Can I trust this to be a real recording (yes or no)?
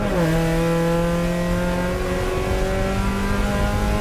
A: yes